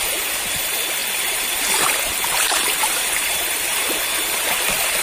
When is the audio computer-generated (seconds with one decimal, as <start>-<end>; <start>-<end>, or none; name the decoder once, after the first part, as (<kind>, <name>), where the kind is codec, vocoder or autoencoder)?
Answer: 1.0-4.0 (vocoder, BigVGAN v2)